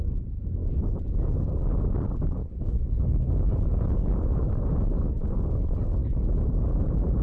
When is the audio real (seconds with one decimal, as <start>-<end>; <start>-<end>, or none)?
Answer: 0.0-2.4; 3.3-7.2